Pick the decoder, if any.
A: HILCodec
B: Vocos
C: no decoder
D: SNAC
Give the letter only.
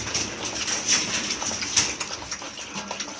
C